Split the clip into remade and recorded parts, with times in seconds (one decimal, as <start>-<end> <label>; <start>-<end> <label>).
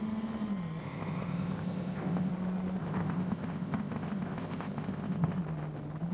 0.0-0.8 recorded; 0.8-2.3 remade; 2.3-2.8 recorded; 2.8-5.4 remade; 5.4-6.1 recorded